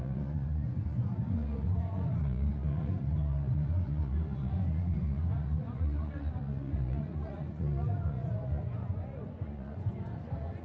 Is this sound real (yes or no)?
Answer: no